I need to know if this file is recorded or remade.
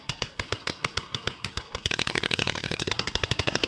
remade